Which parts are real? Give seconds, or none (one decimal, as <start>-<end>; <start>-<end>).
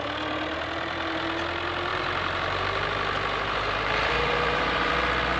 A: 0.0-1.9; 4.9-5.4